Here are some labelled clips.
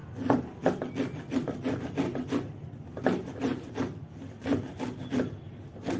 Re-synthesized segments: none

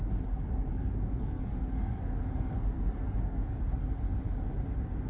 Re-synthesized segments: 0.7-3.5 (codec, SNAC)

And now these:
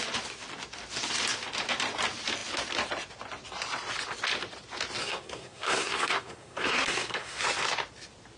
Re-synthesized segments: 5.0-7.4 (codec, SNAC)

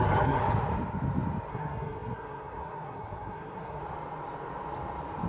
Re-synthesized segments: 0.0-0.4 (codec, SNAC); 1.5-3.8

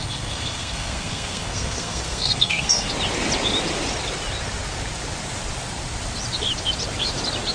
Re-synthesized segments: 0.0-2.9 (codec, SNAC)